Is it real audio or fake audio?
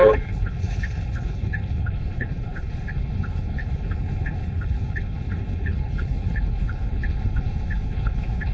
fake